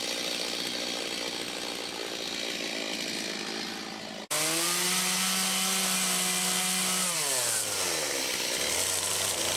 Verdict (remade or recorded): recorded